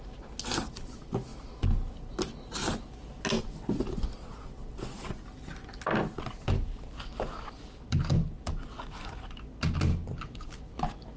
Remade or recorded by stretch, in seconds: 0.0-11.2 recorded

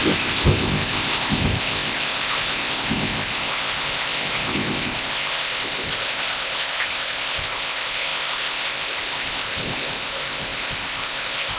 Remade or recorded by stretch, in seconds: 0.0-11.6 remade

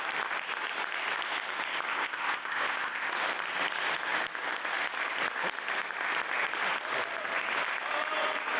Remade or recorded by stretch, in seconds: 0.0-1.9 recorded; 1.9-3.1 remade; 3.1-8.6 recorded

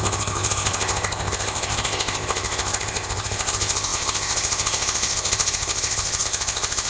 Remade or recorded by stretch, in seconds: 0.0-6.9 remade

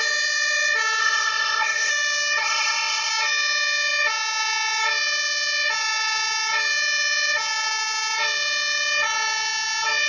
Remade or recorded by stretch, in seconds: 0.0-1.0 recorded; 1.0-1.9 remade; 1.9-2.4 recorded; 2.4-3.1 remade; 3.1-10.1 recorded

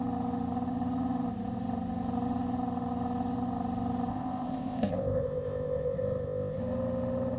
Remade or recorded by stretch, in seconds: 0.0-4.1 recorded; 4.1-6.6 remade; 6.6-7.4 recorded

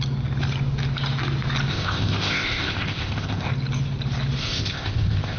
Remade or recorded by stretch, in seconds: 0.0-1.7 recorded; 1.7-3.5 remade; 3.5-4.4 recorded; 4.4-5.4 remade